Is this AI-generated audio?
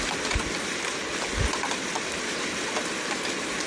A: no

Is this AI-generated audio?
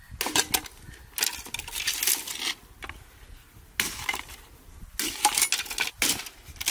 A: no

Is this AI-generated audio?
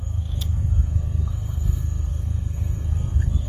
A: yes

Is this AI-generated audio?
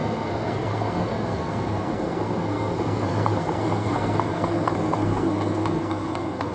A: yes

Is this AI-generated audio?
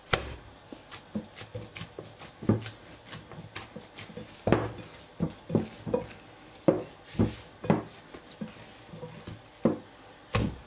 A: no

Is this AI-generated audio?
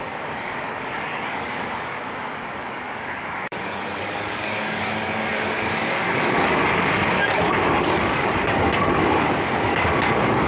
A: yes